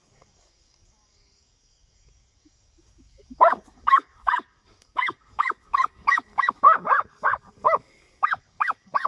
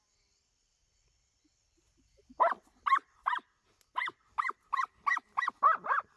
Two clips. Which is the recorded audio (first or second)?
second